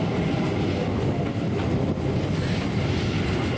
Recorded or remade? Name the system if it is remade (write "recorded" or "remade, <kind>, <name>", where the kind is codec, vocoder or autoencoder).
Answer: recorded